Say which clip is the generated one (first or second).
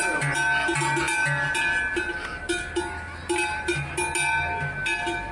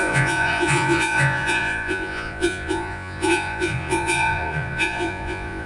second